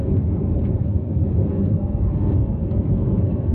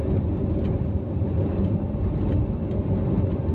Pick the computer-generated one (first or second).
first